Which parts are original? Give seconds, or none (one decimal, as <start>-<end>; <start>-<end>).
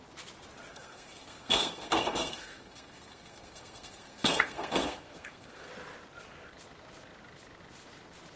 0.0-0.7; 5.7-8.4